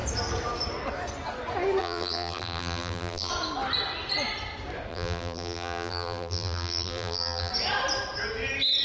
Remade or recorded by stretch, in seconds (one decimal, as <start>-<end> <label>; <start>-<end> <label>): 0.0-1.8 recorded; 1.8-3.3 remade; 3.3-4.9 recorded; 4.9-7.5 remade; 7.5-8.8 recorded